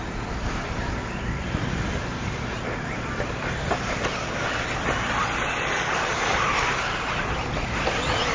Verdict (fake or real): real